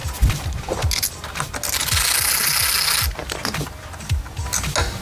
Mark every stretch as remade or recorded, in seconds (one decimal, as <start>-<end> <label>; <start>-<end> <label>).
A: 0.0-5.0 recorded